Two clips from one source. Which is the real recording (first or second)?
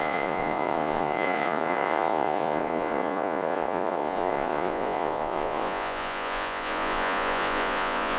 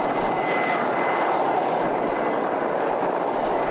second